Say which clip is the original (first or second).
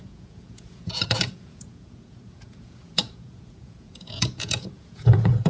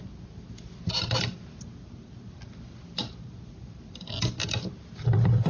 second